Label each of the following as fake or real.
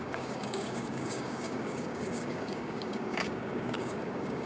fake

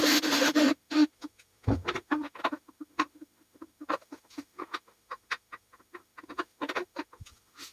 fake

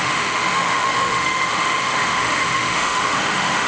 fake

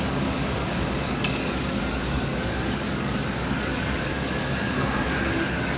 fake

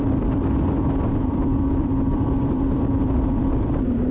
fake